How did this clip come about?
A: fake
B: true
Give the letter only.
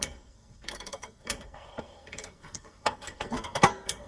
A